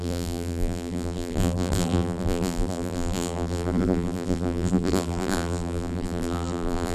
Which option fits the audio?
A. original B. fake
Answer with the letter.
B